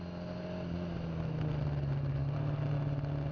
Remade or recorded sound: recorded